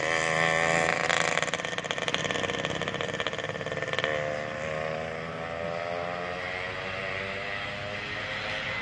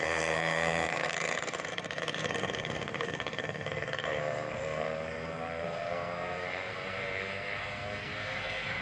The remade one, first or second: second